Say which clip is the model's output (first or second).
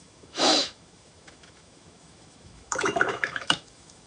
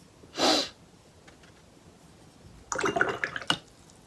first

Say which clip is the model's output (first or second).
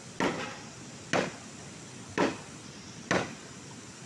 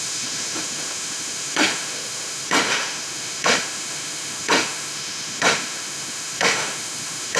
second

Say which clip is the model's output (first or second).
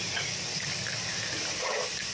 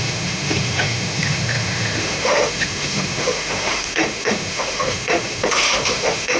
second